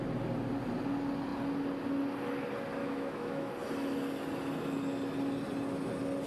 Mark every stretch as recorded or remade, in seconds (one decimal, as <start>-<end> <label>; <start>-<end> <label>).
0.0-2.8 recorded; 2.8-3.5 remade; 3.5-6.3 recorded